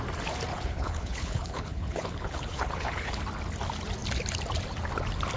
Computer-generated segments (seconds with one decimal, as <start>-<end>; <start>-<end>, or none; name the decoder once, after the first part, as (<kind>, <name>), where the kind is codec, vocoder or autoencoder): 0.5-3.2 (codec, HILCodec)